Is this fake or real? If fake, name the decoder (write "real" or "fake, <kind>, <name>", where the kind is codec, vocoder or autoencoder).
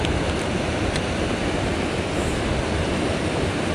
real